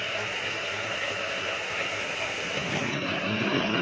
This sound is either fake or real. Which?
fake